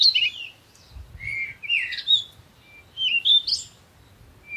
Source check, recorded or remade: recorded